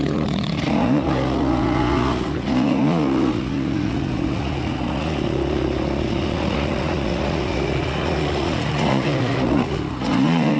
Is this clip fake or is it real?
fake